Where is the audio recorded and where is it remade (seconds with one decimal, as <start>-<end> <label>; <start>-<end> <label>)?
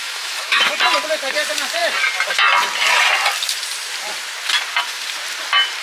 0.0-0.7 remade; 0.7-5.8 recorded